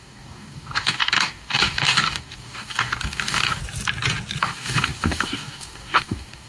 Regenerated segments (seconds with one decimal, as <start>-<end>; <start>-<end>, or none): 0.0-3.6; 4.4-6.5